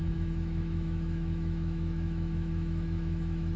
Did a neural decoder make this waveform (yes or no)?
yes